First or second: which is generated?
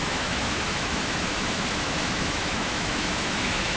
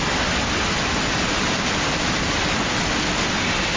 first